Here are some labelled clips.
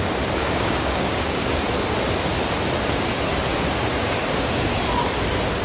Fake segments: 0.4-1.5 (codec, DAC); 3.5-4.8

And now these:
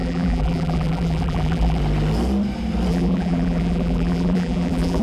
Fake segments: 0.0-1.8 (vocoder, BigVGAN v2); 2.9-5.0